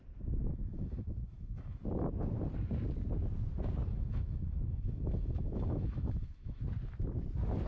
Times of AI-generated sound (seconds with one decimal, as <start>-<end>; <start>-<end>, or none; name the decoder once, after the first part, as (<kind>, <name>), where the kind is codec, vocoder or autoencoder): 0.4-1.8 (autoencoder, DAC-VAE); 3.9-6.6